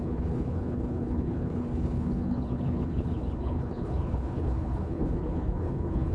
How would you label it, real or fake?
fake